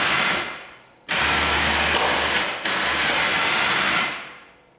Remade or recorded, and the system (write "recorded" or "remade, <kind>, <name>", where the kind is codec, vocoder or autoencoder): recorded